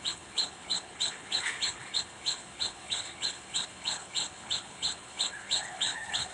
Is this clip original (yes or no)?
no